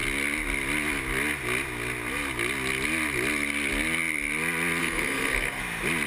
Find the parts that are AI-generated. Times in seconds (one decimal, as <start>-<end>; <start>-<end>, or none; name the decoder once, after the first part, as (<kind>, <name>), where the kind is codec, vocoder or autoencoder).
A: 4.8-5.6 (codec, SNAC)